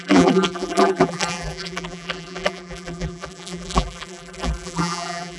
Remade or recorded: remade